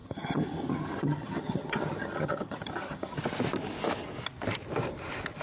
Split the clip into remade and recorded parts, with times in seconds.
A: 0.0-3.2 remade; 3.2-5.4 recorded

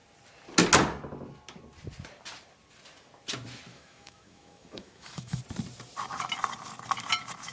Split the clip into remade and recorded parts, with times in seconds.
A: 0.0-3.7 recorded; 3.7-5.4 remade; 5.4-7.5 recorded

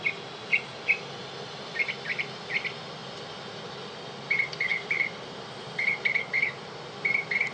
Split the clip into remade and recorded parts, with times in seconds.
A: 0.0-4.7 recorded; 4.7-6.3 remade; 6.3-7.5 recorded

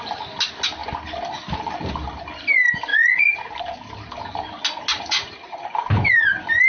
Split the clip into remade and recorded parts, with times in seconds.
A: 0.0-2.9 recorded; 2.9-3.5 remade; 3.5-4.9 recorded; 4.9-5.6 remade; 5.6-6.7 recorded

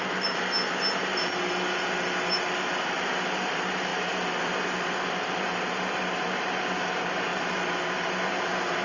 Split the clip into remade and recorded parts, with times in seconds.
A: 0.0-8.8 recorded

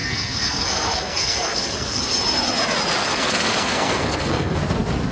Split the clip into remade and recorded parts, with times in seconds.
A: 0.0-2.0 remade; 2.0-3.0 recorded; 3.0-4.6 remade; 4.6-5.1 recorded